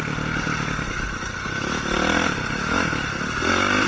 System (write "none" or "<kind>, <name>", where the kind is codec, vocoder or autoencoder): none